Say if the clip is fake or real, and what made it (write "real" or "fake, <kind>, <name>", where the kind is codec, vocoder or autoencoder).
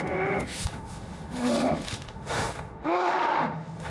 fake, autoencoder, DAC-VAE